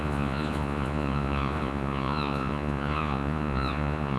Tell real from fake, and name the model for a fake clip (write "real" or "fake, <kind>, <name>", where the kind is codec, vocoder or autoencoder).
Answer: fake, vocoder, Vocos